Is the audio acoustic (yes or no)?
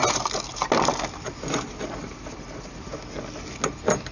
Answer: yes